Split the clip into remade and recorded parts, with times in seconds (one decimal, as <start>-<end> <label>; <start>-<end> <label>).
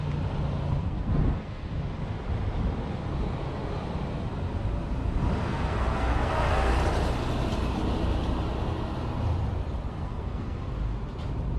0.0-0.8 recorded; 0.8-1.7 remade; 1.7-5.5 recorded; 5.5-6.7 remade; 6.7-9.9 recorded; 9.9-10.7 remade; 10.7-11.6 recorded